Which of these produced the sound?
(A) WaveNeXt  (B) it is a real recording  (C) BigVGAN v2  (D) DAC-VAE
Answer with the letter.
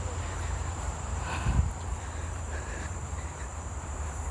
C